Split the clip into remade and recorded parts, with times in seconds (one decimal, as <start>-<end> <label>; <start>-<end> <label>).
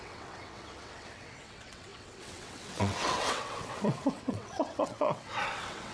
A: 0.0-5.9 remade